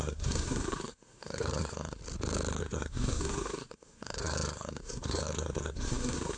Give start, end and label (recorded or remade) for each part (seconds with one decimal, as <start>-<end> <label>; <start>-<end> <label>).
0.0-2.0 remade; 2.0-2.6 recorded; 2.6-6.4 remade